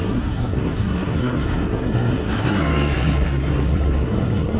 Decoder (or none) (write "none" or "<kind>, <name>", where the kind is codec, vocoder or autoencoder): codec, SNAC